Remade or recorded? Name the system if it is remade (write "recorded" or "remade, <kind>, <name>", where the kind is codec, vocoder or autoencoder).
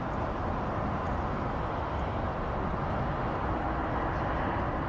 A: recorded